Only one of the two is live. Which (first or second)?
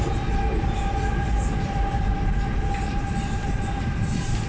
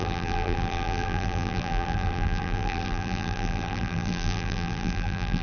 first